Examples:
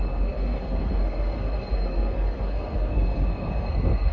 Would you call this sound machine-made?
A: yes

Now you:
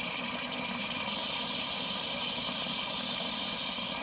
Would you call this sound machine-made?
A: no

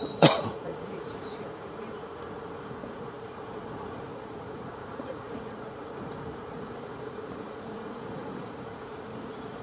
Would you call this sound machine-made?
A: yes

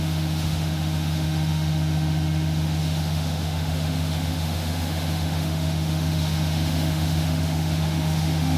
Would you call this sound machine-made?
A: yes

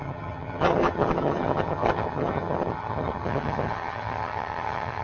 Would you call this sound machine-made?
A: yes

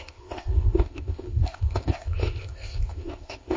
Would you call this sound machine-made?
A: yes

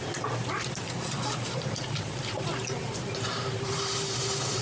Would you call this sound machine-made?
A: yes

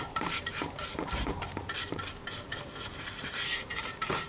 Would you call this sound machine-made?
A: yes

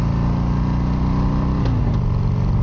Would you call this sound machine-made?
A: no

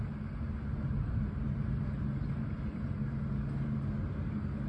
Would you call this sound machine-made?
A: no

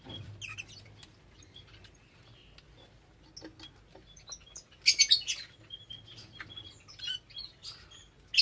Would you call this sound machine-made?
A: no